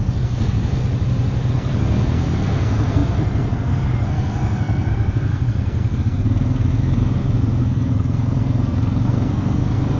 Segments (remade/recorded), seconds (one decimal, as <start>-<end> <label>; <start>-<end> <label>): 0.0-0.8 remade; 0.8-1.5 recorded; 1.5-10.0 remade